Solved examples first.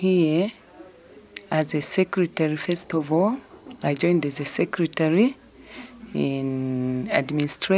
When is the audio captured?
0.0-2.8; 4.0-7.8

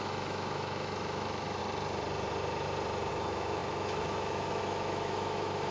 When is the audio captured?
1.6-3.1